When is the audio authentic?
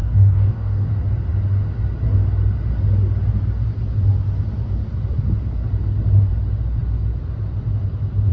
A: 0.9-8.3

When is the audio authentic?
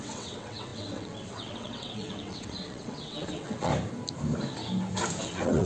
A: 3.7-5.2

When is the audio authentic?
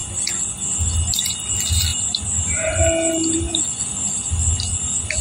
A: 0.0-1.9; 2.8-5.2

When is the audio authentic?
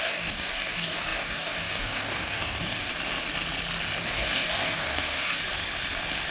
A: 2.9-4.0; 5.4-6.3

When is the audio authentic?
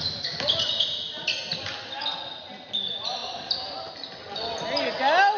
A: 0.0-3.2; 3.9-5.4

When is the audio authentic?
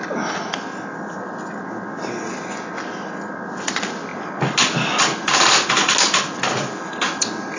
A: 0.0-7.6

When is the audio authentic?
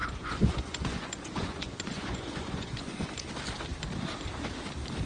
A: 3.1-5.1